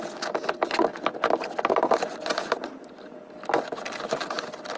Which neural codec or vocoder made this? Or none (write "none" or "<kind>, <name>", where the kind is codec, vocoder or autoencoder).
none